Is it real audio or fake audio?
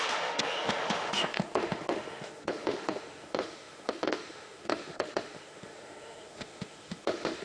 fake